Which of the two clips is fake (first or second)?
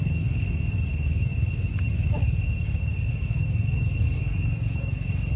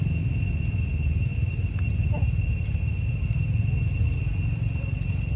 first